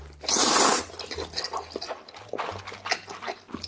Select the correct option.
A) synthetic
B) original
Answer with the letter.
B